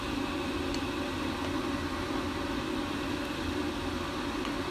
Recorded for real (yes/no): yes